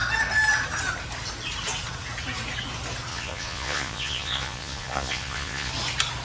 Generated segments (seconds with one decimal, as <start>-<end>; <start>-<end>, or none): 3.1-5.7